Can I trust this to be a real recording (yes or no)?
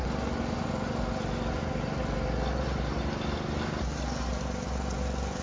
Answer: yes